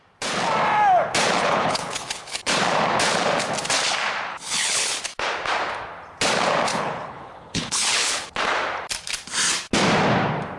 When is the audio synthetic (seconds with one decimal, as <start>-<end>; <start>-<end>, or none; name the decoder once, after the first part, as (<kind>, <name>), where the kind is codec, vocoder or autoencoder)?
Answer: 1.4-2.5 (codec, HILCodec); 4.3-5.0; 6.7-8.3